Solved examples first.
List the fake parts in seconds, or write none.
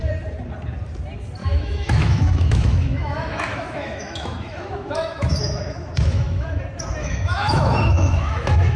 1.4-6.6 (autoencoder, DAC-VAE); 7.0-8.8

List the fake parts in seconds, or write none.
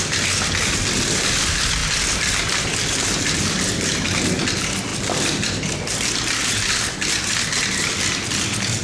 none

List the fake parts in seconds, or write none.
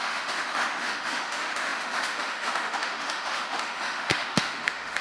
0.0-5.0 (autoencoder, DAC-VAE)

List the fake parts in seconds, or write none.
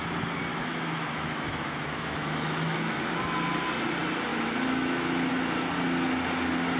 0.5-3.0 (autoencoder, DAC-VAE); 4.3-5.3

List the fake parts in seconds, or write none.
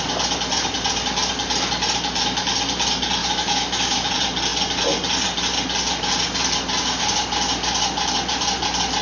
3.2-4.1 (autoencoder, DAC-VAE)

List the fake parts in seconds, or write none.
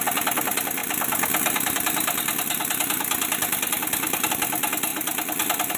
none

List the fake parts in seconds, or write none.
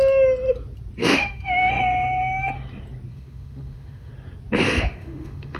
1.0-1.7 (autoencoder, DAC-VAE); 3.1-4.1; 4.6-5.6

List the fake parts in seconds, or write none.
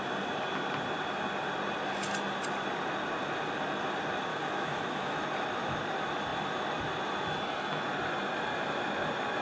4.3-5.2 (autoencoder, DAC-VAE)